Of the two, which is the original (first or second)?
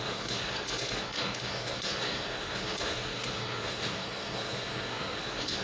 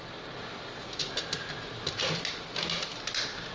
second